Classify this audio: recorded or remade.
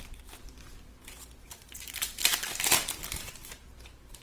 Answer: remade